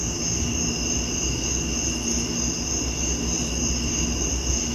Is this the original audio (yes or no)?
yes